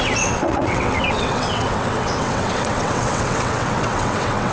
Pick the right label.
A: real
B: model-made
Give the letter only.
B